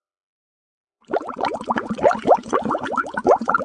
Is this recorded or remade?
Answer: remade